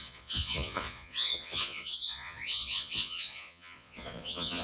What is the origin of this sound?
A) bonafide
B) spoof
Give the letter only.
B